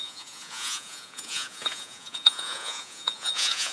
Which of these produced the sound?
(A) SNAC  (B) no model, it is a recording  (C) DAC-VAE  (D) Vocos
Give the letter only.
D